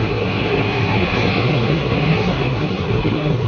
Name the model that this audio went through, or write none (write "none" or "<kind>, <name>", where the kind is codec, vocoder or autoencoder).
codec, SNAC